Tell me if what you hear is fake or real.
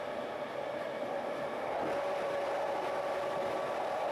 real